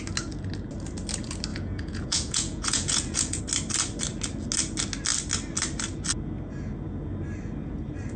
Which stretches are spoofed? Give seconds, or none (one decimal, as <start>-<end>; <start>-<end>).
1.5-3.4